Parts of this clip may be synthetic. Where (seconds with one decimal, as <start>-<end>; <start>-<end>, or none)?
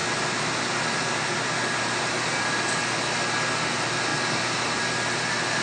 0.0-2.8; 4.1-4.8